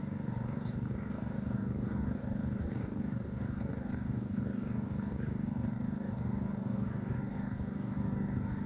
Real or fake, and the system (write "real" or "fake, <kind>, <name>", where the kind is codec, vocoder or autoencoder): fake, codec, DAC